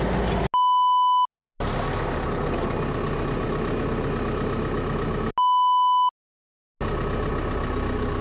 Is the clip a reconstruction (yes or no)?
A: no